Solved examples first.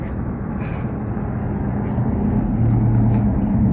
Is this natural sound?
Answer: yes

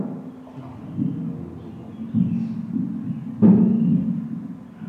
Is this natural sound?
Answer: yes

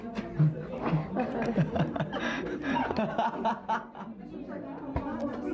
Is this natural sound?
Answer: yes